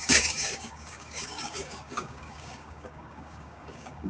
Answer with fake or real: fake